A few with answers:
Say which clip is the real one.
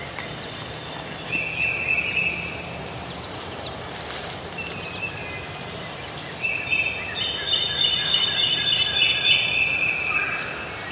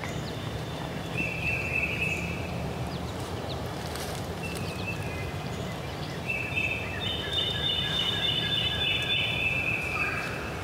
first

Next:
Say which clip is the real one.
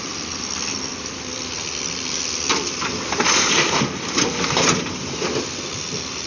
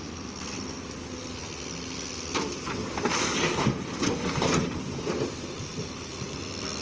second